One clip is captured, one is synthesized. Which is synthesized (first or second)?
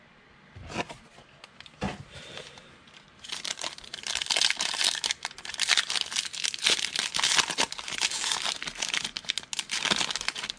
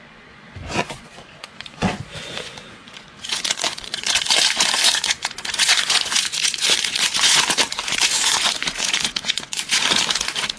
second